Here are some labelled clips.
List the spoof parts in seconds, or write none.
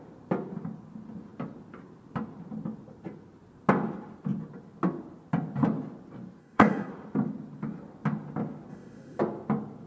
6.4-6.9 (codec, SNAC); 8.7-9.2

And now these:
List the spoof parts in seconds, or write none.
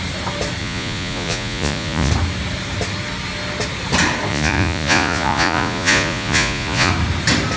0.6-2.1 (vocoder, Vocos); 4.3-6.9